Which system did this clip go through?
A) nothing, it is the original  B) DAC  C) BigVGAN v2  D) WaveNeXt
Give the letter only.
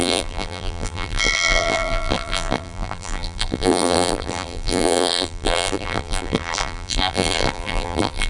C